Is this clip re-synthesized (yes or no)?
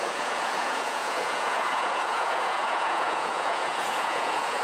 yes